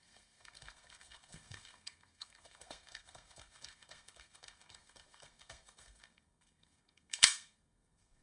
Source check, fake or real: fake